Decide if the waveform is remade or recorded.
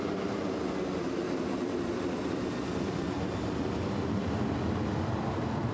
remade